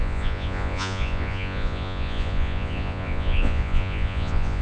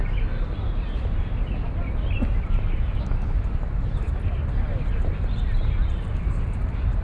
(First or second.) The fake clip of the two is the first